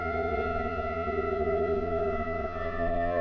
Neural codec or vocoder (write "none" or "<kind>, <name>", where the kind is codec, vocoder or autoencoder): vocoder, Vocos